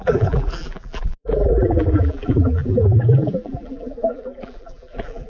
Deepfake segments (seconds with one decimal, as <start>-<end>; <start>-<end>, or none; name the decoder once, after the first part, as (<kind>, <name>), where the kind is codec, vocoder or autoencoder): 0.0-5.3 (vocoder, BigVGAN v2)